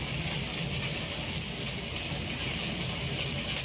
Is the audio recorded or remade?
recorded